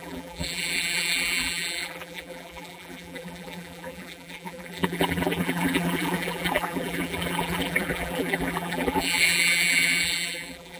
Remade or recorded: remade